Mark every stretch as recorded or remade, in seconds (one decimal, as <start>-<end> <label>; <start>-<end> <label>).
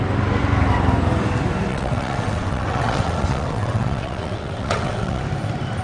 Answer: 0.0-1.7 recorded; 1.7-5.2 remade; 5.2-5.8 recorded